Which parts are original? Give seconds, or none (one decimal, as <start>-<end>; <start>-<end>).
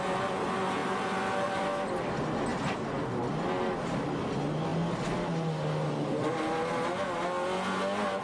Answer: 0.0-0.8; 1.6-8.2